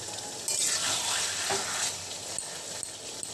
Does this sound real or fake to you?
real